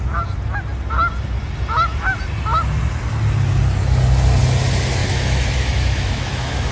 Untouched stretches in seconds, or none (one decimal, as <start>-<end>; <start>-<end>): 0.0-5.0